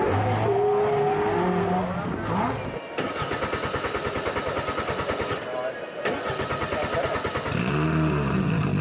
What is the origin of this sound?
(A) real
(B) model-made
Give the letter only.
A